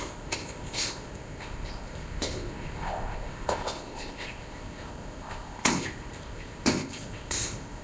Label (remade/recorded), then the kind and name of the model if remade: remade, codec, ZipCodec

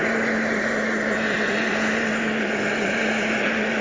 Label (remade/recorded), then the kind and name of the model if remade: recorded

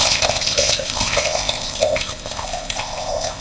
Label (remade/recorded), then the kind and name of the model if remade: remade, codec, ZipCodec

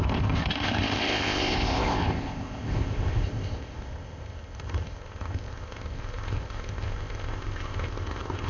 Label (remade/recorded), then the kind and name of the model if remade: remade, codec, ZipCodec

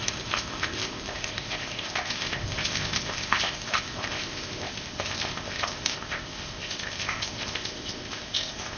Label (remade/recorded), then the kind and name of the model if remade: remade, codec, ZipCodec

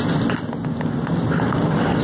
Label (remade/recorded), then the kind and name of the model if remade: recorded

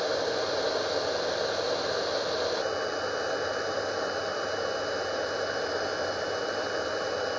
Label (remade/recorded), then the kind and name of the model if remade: recorded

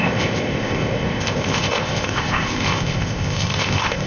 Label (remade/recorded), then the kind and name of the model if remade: remade, codec, ZipCodec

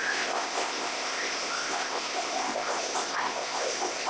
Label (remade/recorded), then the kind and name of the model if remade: remade, codec, ZipCodec